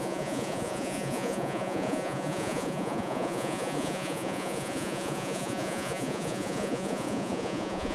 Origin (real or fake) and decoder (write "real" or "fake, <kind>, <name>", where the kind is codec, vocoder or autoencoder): fake, vocoder, Vocos